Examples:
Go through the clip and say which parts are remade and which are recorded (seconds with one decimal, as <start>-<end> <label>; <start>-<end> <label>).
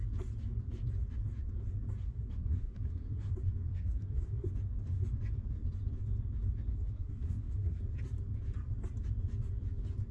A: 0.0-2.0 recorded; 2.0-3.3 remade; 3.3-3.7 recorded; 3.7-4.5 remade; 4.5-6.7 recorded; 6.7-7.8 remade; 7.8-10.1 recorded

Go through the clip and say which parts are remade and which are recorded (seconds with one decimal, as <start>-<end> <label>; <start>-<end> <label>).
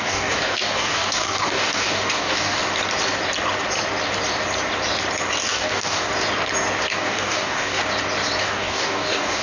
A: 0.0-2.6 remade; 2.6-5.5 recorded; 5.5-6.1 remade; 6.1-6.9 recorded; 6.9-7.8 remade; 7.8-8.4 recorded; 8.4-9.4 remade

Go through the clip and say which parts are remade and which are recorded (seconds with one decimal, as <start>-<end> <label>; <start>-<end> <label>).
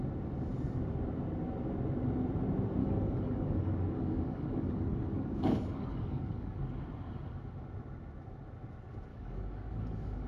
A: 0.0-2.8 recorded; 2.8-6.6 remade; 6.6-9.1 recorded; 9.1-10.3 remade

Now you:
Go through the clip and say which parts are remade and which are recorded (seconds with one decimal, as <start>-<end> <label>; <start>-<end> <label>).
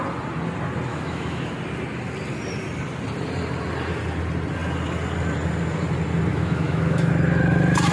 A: 0.0-0.9 recorded; 0.9-1.5 remade; 1.5-6.3 recorded; 6.3-7.1 remade; 7.1-7.9 recorded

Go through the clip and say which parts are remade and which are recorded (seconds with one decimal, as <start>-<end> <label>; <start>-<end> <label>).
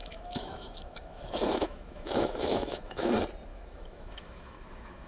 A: 0.0-3.1 remade; 3.1-3.5 recorded; 3.5-5.1 remade